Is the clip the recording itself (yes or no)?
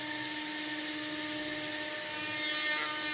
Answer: yes